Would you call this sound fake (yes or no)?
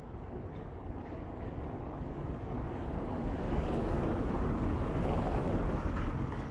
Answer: yes